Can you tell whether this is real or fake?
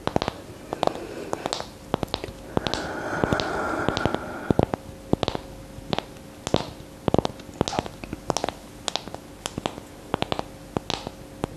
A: real